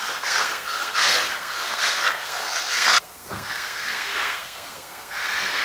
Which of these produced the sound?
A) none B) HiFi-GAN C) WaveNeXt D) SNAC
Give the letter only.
D